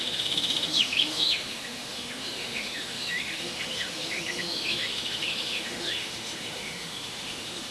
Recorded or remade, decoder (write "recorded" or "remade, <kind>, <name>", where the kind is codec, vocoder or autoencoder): remade, autoencoder, DAC-VAE